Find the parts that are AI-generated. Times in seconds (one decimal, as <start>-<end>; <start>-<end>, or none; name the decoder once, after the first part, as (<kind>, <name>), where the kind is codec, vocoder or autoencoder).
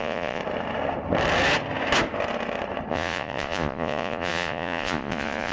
0.0-0.4 (vocoder, Vocos); 2.9-5.5